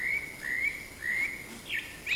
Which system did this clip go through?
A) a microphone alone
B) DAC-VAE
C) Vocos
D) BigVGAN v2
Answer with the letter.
A